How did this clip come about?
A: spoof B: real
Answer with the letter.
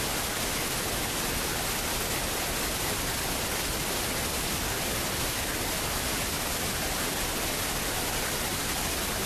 B